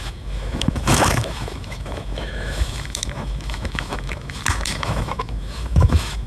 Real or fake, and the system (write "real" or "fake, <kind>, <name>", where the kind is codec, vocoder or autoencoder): fake, autoencoder, DAC-VAE